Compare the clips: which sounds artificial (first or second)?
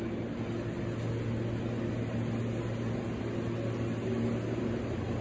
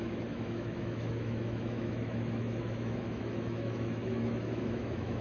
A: second